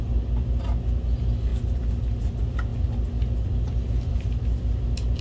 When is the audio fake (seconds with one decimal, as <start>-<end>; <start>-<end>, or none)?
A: none